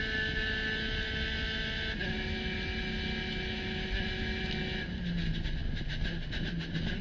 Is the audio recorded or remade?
recorded